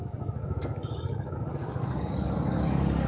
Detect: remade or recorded remade